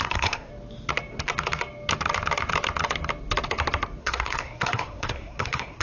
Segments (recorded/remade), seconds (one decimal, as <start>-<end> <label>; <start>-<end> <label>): 0.0-0.5 remade; 0.5-4.0 recorded; 4.0-5.8 remade